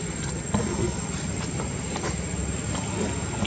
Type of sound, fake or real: real